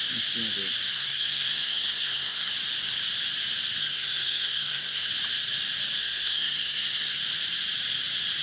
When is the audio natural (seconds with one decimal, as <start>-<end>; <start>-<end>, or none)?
0.0-0.9; 2.5-3.8; 5.1-6.0; 7.2-8.4

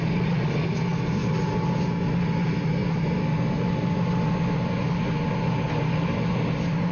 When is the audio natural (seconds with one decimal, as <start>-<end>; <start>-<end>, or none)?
0.0-6.9

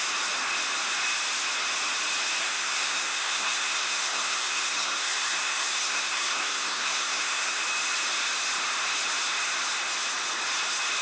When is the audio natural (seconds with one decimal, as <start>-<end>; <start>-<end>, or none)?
0.0-2.4; 7.6-11.0

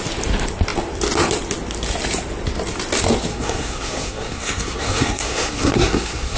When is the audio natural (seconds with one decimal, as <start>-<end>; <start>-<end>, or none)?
0.0-3.3